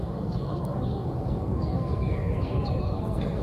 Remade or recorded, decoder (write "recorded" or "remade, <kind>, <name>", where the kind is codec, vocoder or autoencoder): remade, codec, SNAC